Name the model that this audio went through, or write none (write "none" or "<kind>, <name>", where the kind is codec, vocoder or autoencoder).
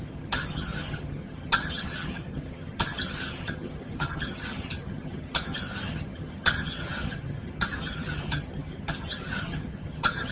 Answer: vocoder, HiFi-GAN